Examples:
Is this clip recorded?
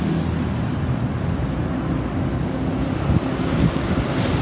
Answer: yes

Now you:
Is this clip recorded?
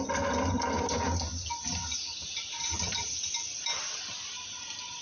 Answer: yes